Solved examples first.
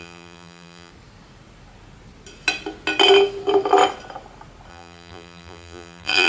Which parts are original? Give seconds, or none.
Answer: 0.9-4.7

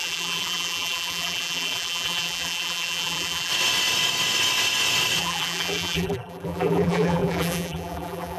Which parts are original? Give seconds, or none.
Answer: 3.5-5.2

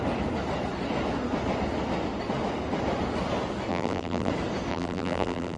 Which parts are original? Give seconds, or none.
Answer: 0.0-3.7; 4.3-4.7

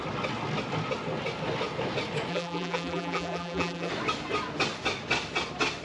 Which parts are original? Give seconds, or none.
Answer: 0.0-2.3; 3.9-5.8

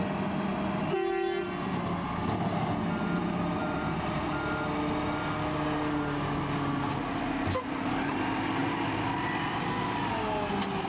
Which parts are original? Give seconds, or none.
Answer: 0.0-3.2; 4.2-10.9

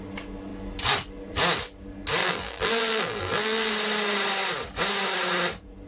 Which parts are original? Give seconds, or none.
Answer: 0.0-2.2; 3.7-5.9

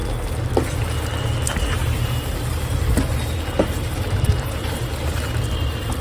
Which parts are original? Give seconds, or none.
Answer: 0.0-1.8; 5.4-6.0

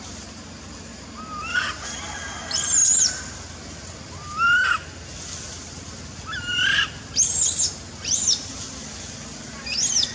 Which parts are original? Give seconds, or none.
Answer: 0.0-10.1